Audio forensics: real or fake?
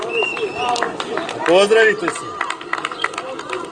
real